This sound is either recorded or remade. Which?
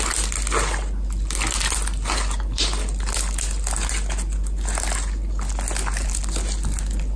recorded